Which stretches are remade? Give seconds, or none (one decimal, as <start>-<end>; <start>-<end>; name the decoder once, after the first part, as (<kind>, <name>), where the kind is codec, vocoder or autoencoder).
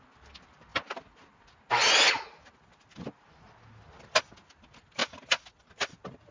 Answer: none